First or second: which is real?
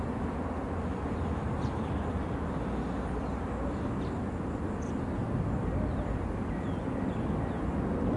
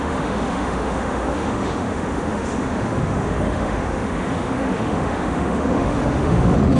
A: first